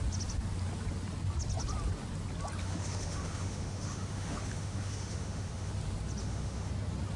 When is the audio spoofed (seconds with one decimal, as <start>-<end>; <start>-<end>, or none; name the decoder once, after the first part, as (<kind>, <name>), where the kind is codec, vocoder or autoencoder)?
2.6-5.7 (autoencoder, DAC-VAE); 6.2-6.7